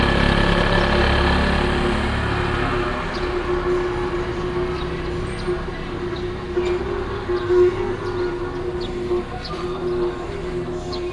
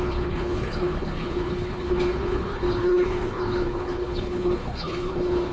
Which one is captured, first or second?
first